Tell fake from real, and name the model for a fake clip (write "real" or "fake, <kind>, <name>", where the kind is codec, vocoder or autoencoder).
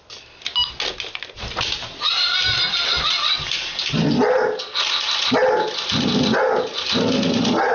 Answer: real